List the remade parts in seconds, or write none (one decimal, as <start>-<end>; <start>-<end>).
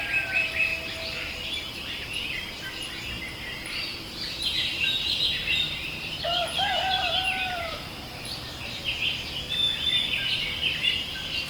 0.0-0.7; 3.8-8.8; 10.1-11.5